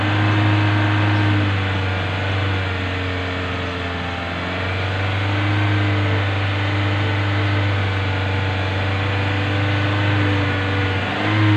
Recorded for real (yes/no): yes